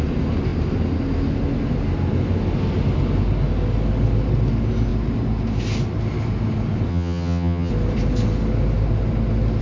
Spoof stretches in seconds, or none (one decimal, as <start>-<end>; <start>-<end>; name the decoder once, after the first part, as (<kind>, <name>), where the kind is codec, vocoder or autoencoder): 6.9-7.7 (vocoder, HiFi-GAN)